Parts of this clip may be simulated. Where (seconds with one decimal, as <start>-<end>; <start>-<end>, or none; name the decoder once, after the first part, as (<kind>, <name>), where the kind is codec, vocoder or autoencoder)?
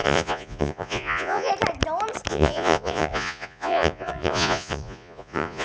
0.0-1.5 (vocoder, Vocos); 2.3-5.6